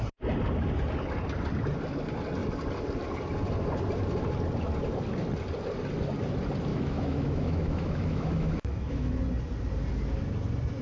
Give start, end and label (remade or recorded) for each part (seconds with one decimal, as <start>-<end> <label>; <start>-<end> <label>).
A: 0.0-6.7 recorded; 6.7-9.2 remade; 9.2-10.8 recorded